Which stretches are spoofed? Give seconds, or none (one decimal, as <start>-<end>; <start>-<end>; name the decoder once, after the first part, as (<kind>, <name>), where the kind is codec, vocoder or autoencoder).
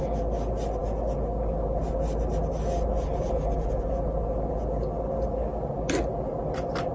none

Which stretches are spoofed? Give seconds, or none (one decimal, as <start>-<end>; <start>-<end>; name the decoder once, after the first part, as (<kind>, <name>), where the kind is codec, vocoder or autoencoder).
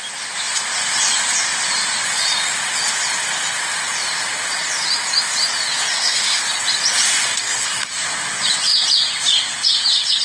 5.9-6.4 (codec, SNAC); 7.4-7.9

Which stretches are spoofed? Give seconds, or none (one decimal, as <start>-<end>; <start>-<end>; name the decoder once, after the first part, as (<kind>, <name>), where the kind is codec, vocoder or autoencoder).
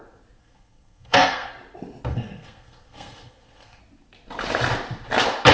0.4-1.5 (codec, SNAC); 2.1-3.8